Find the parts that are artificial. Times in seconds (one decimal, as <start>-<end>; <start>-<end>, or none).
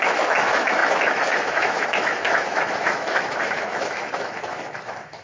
0.0-5.2